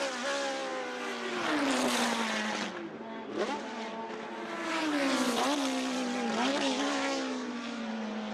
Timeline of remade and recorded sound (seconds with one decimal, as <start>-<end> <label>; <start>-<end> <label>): 0.0-6.5 recorded; 6.5-7.8 remade; 7.8-8.3 recorded